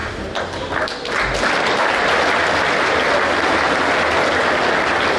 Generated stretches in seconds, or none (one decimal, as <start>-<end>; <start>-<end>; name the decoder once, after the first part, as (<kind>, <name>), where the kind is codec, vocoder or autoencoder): 0.0-0.5 (vocoder, BigVGAN v2)